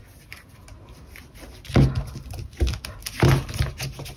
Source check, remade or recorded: recorded